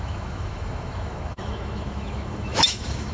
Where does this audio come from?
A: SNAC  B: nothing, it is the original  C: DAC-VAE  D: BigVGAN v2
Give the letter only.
C